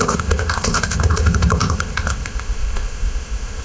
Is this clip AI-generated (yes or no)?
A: yes